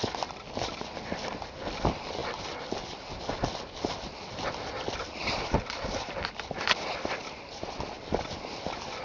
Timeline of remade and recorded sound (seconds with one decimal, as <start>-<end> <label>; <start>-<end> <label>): 0.0-9.0 recorded